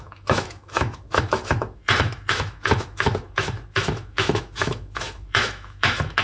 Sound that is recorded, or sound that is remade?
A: remade